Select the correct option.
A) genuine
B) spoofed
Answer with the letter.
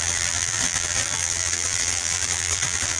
B